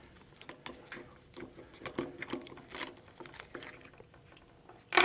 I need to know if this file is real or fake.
real